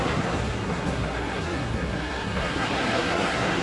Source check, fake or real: fake